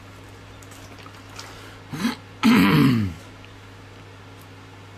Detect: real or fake real